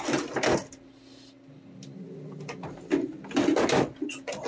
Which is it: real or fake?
real